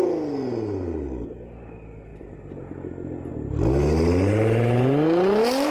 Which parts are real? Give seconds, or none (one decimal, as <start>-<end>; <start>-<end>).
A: 0.0-5.7